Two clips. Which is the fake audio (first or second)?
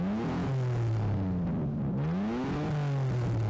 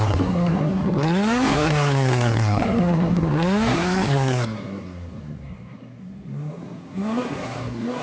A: second